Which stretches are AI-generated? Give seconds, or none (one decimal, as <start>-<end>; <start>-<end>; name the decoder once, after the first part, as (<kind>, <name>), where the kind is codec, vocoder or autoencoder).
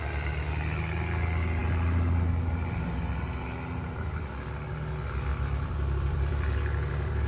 5.3-7.3 (vocoder, BigVGAN v2)